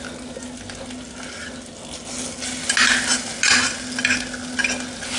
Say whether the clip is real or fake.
real